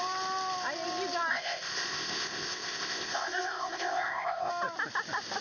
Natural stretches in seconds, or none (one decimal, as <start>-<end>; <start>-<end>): 0.0-1.3; 4.5-5.4

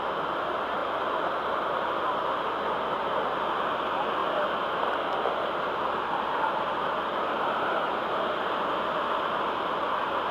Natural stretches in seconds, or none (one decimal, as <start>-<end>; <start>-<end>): 0.0-10.3

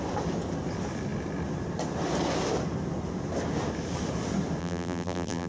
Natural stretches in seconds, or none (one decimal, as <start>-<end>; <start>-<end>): 0.0-4.6

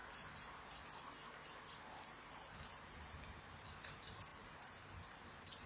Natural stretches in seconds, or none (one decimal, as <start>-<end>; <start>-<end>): 0.0-3.4

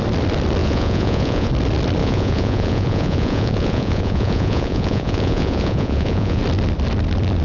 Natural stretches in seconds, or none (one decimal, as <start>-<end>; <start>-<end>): 0.0-0.6; 1.5-2.0; 6.4-7.4

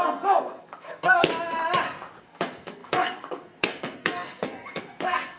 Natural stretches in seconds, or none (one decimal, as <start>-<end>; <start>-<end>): 1.3-2.2